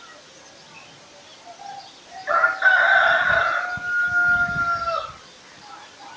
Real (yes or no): yes